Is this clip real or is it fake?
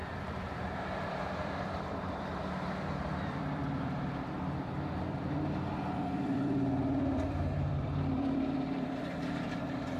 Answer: fake